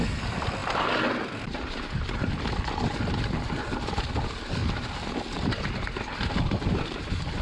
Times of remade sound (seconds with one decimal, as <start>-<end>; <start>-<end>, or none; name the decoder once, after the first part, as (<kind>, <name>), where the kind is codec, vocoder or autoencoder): 0.0-4.6 (vocoder, BigVGAN v2); 5.6-7.4